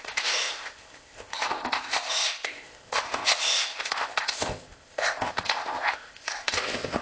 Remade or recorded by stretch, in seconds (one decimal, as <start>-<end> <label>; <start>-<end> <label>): 0.0-7.0 remade